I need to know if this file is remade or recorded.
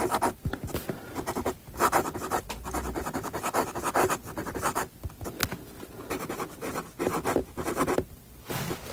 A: recorded